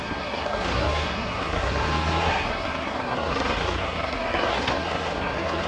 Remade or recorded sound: remade